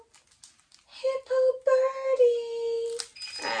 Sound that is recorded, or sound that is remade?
recorded